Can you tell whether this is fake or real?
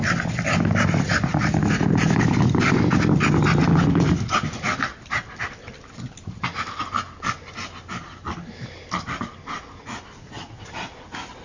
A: real